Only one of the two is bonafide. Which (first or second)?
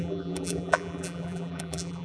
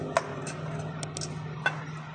second